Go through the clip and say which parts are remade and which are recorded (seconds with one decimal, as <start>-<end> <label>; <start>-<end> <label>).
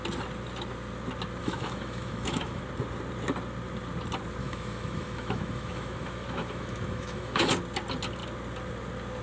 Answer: 0.0-1.4 recorded; 1.4-2.6 remade; 2.6-4.4 recorded; 4.4-7.5 remade; 7.5-9.2 recorded